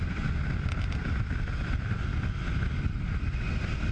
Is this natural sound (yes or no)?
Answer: yes